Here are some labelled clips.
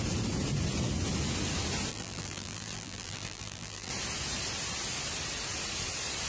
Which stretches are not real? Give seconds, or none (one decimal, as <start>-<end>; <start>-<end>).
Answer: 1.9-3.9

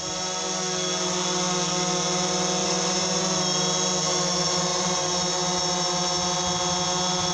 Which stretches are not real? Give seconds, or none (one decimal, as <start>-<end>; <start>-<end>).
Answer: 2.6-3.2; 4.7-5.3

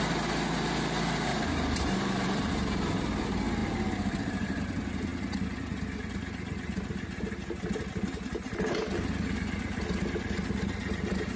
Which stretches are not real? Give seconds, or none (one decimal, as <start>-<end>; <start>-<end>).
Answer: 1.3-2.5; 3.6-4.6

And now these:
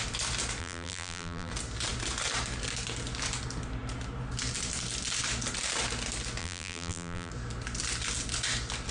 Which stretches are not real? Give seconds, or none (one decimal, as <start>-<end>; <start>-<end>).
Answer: 0.6-1.5; 6.4-7.3

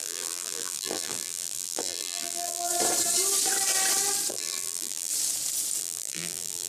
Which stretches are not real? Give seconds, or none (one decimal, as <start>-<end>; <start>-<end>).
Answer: 0.0-2.7; 4.3-5.1; 5.8-6.7